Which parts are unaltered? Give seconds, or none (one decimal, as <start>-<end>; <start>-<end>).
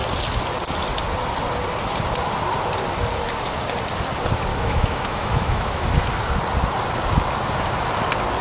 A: 0.0-4.5; 5.8-8.4